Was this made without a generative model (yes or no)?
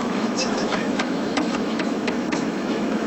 no